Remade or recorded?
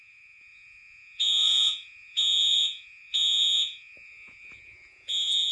remade